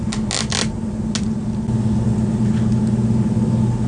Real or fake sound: real